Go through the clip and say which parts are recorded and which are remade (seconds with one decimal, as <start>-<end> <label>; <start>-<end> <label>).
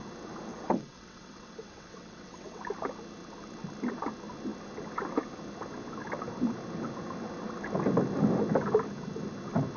0.0-0.5 recorded; 0.5-2.6 remade; 2.6-9.8 recorded